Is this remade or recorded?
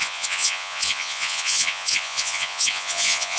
remade